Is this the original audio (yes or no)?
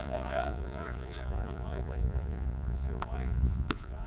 no